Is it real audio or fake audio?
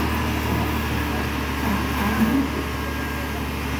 real